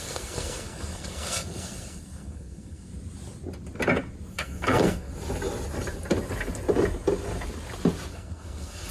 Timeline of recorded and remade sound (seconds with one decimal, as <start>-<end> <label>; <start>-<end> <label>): 0.0-2.9 remade; 2.9-4.3 recorded; 4.3-5.1 remade; 5.1-8.1 recorded; 8.1-8.9 remade